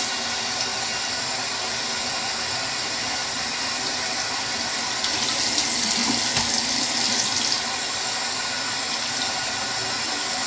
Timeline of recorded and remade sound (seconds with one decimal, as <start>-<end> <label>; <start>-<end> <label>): 0.0-0.7 recorded; 0.7-2.0 remade; 2.0-3.2 recorded; 3.2-4.3 remade; 4.3-10.5 recorded